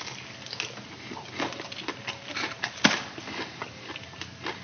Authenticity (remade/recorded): recorded